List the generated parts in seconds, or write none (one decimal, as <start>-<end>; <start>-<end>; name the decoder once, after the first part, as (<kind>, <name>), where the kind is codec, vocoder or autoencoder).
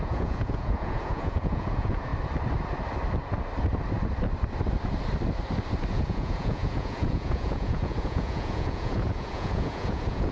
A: 0.0-2.1 (vocoder, Vocos); 5.9-10.3